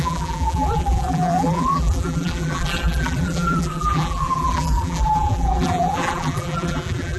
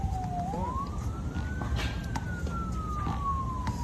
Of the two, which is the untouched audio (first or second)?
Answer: second